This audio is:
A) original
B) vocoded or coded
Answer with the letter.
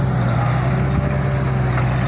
A